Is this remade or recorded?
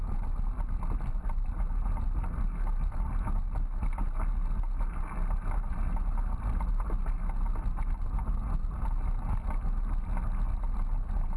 recorded